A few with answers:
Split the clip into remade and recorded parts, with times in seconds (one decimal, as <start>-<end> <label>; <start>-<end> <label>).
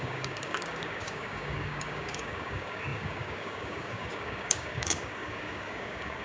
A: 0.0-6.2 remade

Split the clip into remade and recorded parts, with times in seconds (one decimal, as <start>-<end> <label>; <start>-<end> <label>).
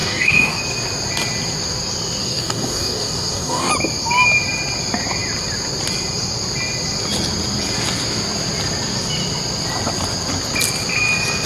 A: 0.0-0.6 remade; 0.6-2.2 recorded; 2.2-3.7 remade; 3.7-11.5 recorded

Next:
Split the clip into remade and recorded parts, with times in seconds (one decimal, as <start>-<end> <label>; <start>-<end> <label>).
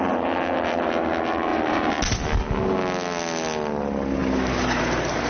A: 0.0-1.5 recorded; 1.5-2.0 remade; 2.0-5.3 recorded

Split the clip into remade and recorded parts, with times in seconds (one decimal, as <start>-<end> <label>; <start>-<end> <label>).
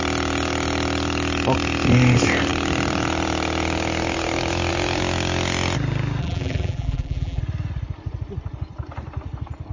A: 0.0-6.2 recorded; 6.2-7.4 remade; 7.4-9.7 recorded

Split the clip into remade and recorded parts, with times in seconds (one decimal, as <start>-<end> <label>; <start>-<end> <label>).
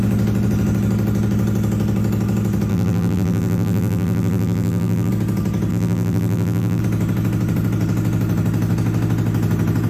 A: 0.0-2.7 recorded; 2.7-5.1 remade; 5.1-5.7 recorded; 5.7-6.8 remade; 6.8-9.9 recorded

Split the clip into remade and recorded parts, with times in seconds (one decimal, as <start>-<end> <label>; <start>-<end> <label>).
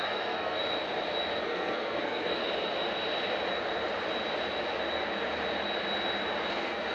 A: 0.0-0.6 remade; 0.6-1.4 recorded; 1.4-2.4 remade; 2.4-6.5 recorded; 6.5-6.9 remade